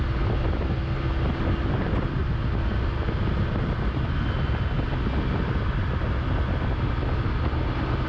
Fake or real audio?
real